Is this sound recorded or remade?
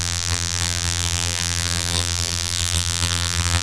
remade